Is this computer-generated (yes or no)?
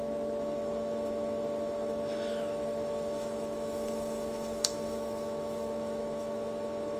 yes